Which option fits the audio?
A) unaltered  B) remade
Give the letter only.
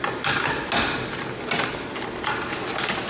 A